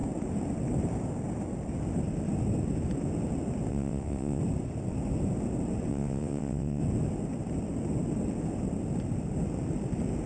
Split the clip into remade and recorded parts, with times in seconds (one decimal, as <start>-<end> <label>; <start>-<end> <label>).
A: 0.0-3.7 recorded; 3.7-4.4 remade; 4.4-5.9 recorded; 5.9-6.8 remade; 6.8-10.3 recorded